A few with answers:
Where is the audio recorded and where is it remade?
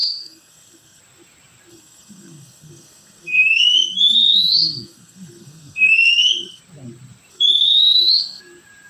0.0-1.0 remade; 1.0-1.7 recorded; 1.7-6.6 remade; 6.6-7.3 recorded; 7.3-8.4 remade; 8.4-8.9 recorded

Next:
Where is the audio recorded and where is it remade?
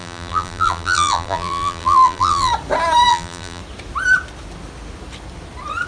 0.0-2.5 remade; 2.5-3.1 recorded; 3.1-3.6 remade; 3.6-5.9 recorded